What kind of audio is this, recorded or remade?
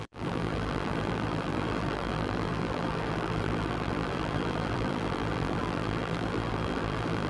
remade